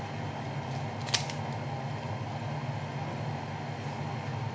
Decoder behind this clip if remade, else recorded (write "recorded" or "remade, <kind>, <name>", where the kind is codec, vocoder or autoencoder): recorded